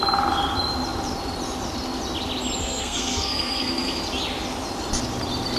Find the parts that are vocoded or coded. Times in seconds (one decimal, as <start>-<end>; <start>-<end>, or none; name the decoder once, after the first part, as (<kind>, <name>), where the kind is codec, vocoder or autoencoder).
2.6-4.0 (codec, SNAC)